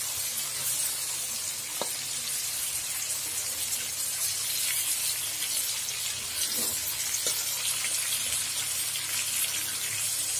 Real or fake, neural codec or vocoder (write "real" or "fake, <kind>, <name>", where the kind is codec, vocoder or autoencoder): real